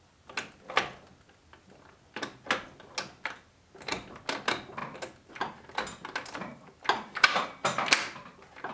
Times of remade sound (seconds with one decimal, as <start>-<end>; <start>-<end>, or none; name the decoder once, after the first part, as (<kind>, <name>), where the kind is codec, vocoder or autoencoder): none